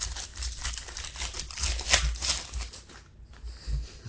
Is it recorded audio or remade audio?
recorded